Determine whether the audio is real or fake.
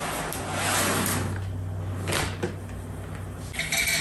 real